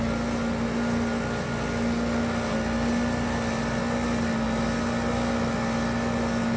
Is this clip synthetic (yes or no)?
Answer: no